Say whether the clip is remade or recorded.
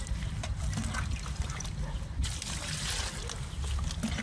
recorded